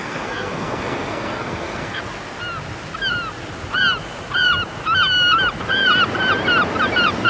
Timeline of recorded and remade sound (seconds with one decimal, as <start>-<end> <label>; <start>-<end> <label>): 0.0-2.0 remade; 2.0-7.3 recorded